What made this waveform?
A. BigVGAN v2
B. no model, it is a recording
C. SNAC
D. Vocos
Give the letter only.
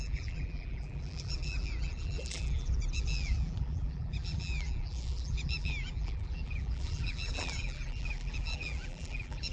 A